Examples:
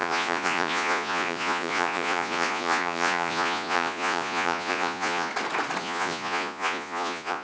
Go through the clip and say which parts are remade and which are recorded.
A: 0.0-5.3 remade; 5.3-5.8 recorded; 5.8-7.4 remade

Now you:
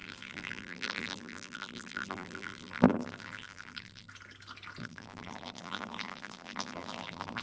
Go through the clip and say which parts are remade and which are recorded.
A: 0.0-4.1 remade; 4.1-4.8 recorded; 4.8-7.4 remade

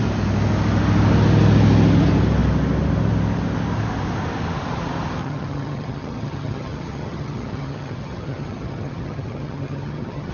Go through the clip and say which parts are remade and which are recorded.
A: 0.0-5.2 recorded; 5.2-10.3 remade

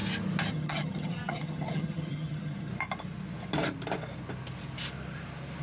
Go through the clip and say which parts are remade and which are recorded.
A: 0.0-0.5 recorded; 0.5-2.7 remade; 2.7-5.6 recorded

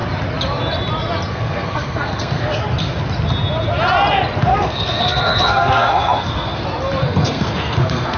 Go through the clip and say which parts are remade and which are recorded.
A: 0.0-1.3 recorded; 1.3-2.6 remade; 2.6-4.5 recorded; 4.5-6.6 remade; 6.6-7.0 recorded; 7.0-8.2 remade

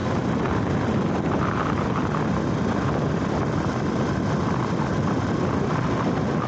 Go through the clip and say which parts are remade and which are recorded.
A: 0.0-6.5 recorded

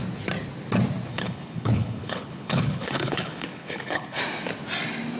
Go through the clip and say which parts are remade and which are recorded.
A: 0.0-1.1 recorded; 1.1-4.2 remade; 4.2-5.2 recorded

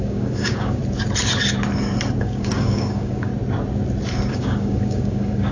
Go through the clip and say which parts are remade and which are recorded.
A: 0.0-0.8 remade; 0.8-2.2 recorded; 2.2-3.3 remade; 3.3-4.3 recorded; 4.3-5.5 remade